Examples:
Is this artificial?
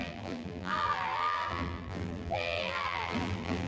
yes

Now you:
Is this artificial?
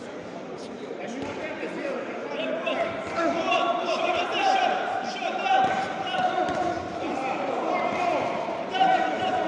yes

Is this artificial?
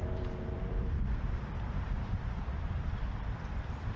yes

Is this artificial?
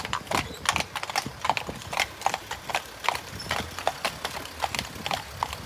no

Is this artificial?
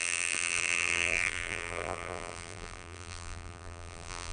yes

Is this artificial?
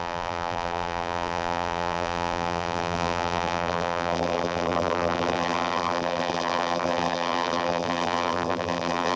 yes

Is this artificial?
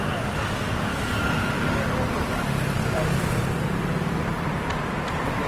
yes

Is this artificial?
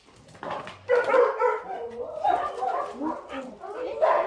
no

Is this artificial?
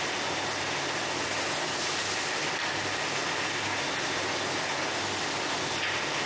no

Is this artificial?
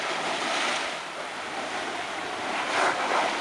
no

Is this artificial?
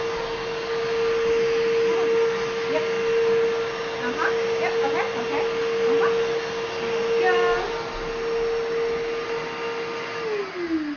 no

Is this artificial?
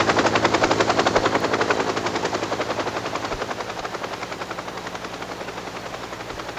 no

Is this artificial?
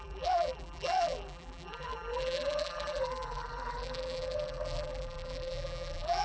yes